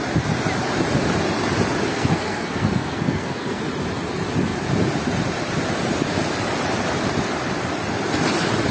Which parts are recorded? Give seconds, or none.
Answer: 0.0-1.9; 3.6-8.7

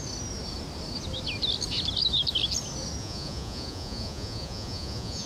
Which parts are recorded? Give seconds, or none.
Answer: 0.0-3.0

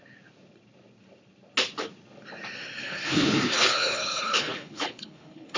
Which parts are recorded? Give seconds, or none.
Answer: 0.0-2.8

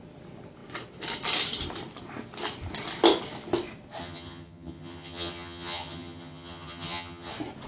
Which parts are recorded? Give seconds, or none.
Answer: 0.0-4.0; 7.3-7.7

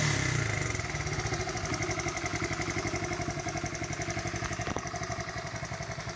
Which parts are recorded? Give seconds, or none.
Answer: 0.0-6.2